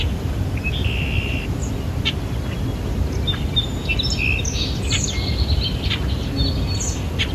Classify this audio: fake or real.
real